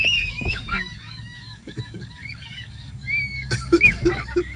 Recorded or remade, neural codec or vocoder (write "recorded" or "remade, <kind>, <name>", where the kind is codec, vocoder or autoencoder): remade, codec, DAC